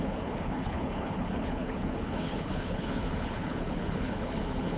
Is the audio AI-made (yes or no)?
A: yes